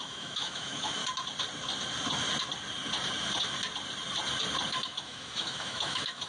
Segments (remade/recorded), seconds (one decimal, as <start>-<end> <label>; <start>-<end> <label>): 0.0-1.0 remade; 1.0-4.7 recorded; 4.7-6.3 remade